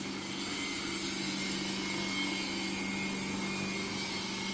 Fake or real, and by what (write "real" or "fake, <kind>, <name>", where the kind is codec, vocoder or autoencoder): real